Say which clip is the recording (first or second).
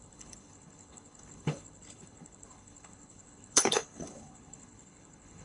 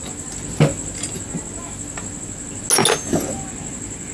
second